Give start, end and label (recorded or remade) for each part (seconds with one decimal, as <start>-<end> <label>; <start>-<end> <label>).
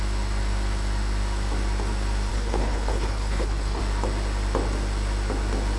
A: 0.0-2.3 recorded; 2.3-3.8 remade; 3.8-5.8 recorded